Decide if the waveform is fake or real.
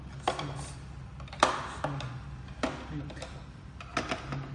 real